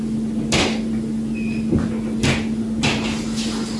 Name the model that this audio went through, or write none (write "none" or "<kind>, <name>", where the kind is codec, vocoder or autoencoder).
none